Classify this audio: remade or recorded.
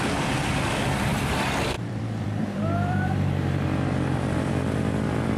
remade